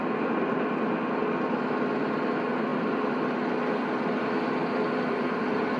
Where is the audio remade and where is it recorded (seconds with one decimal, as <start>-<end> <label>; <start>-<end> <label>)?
0.0-5.8 recorded